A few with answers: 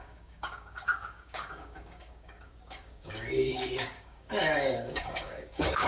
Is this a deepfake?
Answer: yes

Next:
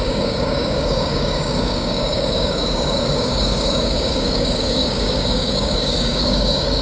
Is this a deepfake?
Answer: yes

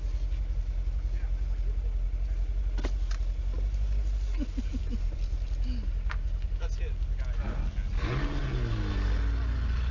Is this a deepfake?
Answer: no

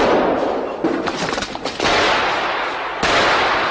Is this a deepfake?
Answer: no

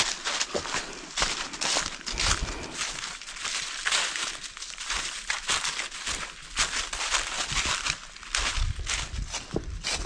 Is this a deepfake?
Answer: no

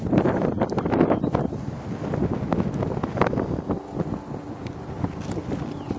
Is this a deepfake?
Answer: no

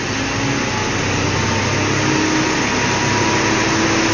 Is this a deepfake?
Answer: no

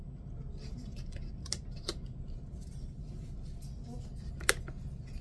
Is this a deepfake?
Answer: no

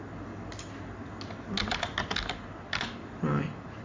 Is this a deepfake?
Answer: no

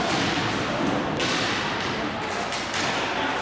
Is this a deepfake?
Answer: no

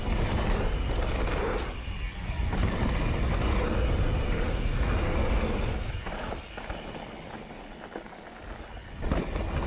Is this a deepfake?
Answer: no